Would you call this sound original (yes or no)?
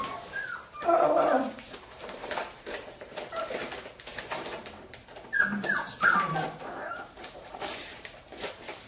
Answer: no